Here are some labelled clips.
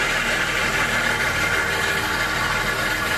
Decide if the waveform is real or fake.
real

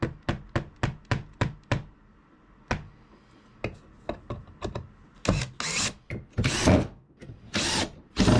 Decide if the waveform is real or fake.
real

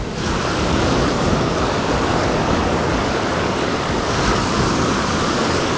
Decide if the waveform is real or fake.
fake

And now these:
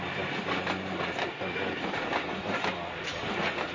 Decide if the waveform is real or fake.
real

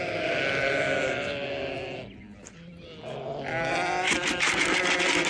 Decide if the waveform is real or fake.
real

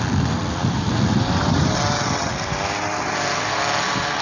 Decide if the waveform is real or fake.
real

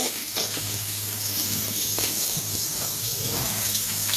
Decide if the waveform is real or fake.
fake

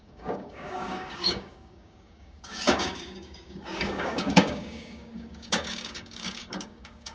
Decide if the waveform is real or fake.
fake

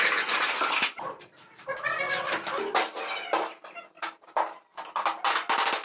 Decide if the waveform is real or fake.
real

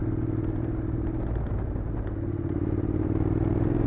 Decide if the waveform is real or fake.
real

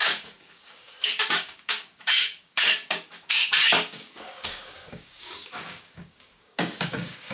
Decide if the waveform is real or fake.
fake